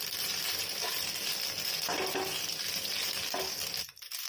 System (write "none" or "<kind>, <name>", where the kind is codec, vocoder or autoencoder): none